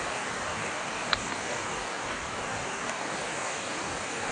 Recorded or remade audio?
remade